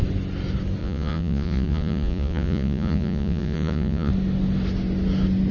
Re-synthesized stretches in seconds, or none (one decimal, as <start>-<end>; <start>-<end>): 0.8-4.1